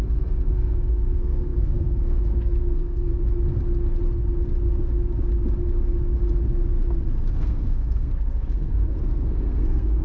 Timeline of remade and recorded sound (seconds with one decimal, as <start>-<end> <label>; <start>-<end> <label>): 0.0-3.1 remade; 3.1-7.3 recorded; 7.3-10.0 remade